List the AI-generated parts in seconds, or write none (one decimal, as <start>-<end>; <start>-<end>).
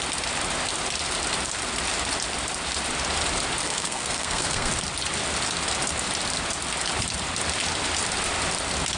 3.6-4.7